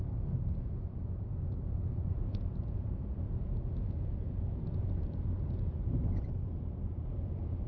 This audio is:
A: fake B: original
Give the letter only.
A